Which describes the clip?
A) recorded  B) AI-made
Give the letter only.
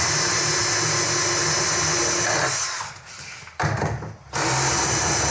A